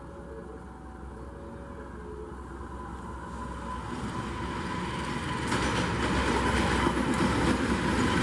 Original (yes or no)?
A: yes